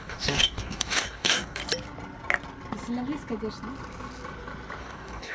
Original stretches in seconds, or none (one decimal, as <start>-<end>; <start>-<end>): 1.6-4.8